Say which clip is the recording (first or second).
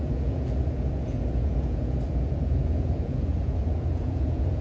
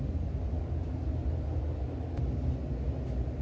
second